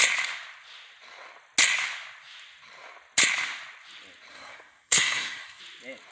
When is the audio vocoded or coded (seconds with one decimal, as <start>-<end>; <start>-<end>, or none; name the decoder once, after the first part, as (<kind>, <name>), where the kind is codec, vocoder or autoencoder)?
4.3-5.6 (codec, SNAC)